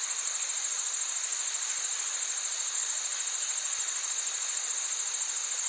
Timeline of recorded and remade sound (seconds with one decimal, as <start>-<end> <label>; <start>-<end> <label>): 0.0-5.7 recorded